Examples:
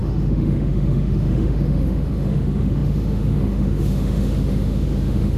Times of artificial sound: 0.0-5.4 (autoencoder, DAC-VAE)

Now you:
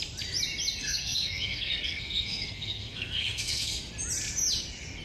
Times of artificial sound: 0.8-3.8 (codec, SNAC)

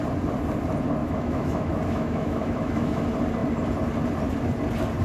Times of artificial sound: 1.0-3.0 (autoencoder, DAC-VAE)

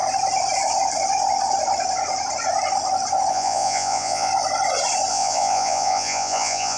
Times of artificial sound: 3.3-4.3 (vocoder, Vocos); 5.1-6.8